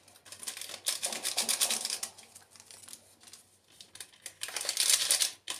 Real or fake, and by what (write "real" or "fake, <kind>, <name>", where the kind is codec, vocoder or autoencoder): real